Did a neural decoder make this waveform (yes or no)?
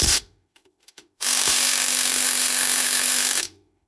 yes